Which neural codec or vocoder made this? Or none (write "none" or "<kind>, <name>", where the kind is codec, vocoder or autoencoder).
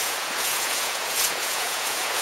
vocoder, Vocos